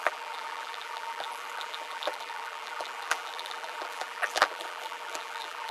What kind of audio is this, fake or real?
fake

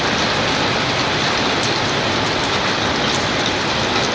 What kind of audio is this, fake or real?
real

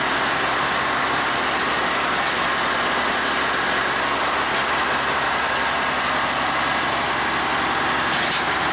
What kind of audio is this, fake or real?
real